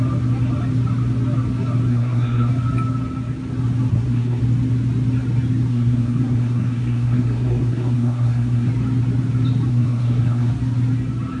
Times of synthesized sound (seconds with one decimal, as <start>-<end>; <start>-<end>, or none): 1.9-2.5; 3.9-4.4; 5.7-8.7; 9.7-10.5